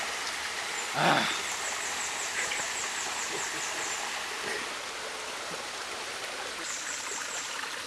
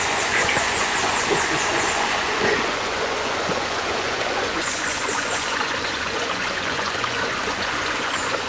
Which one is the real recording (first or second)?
first